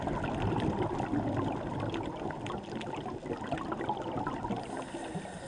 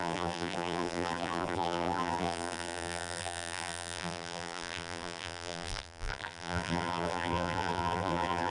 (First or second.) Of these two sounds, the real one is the first